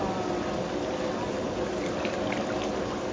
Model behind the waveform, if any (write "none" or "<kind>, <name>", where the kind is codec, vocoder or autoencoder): none